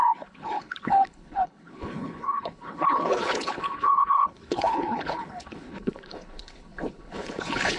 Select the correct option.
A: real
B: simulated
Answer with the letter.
B